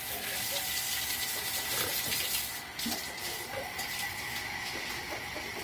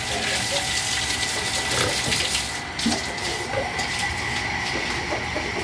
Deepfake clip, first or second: first